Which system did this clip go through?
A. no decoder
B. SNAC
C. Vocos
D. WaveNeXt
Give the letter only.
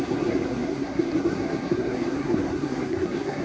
B